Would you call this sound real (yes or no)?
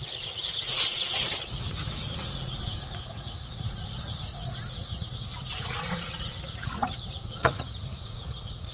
no